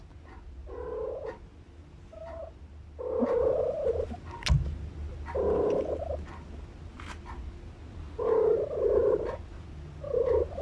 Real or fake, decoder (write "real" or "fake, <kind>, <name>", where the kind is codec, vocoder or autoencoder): real